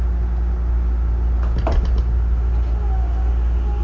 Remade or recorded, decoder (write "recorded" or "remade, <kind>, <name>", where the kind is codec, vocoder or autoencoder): recorded